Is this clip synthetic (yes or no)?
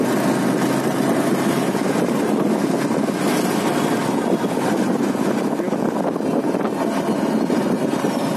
no